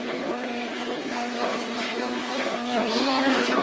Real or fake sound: fake